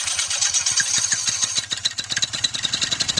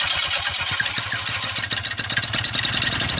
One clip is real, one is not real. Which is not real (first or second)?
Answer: first